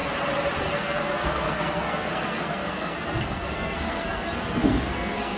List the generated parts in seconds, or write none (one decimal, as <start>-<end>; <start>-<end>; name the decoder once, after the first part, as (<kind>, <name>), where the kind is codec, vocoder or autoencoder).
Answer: 0.6-5.4 (codec, SNAC)